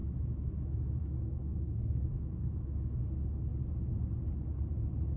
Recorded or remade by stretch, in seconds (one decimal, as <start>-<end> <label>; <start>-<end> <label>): 0.0-3.0 remade; 3.0-5.2 recorded